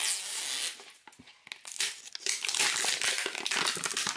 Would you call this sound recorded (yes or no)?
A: yes